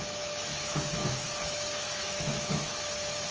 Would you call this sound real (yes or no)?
no